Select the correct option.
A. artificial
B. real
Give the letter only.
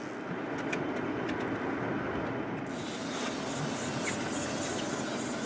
B